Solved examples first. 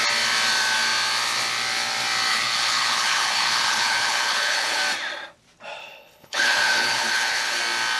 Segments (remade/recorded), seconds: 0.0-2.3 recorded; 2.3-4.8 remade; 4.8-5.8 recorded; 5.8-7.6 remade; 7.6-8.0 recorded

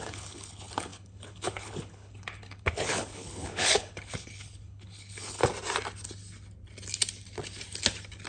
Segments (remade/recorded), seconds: 0.0-5.4 remade; 5.4-8.3 recorded

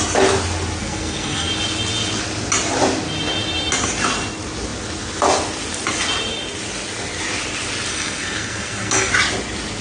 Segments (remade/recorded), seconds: 0.0-0.8 recorded; 0.8-1.5 remade; 1.5-7.9 recorded; 7.9-9.1 remade; 9.1-9.8 recorded

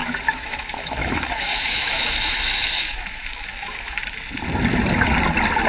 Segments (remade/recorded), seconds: 0.0-4.0 remade; 4.0-5.7 recorded

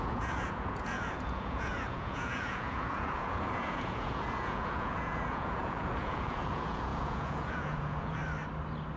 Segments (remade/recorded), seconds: 0.0-8.2 remade; 8.2-9.0 recorded